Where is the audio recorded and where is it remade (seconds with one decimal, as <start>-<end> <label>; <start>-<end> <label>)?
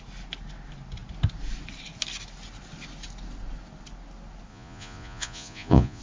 0.0-4.5 recorded; 4.5-6.0 remade